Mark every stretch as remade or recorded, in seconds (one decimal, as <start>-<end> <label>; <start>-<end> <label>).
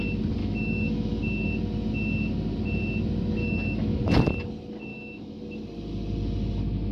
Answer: 0.0-0.4 recorded; 0.4-1.2 remade; 1.2-3.4 recorded; 3.4-4.0 remade; 4.0-4.9 recorded; 4.9-5.4 remade; 5.4-6.9 recorded